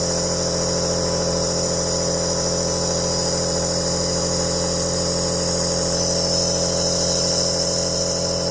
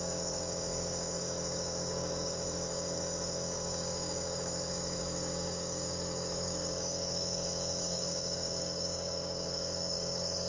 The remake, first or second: second